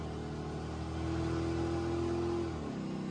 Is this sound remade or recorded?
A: recorded